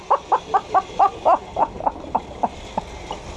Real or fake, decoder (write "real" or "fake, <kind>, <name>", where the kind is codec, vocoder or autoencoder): real